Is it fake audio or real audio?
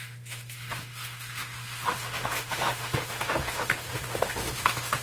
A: fake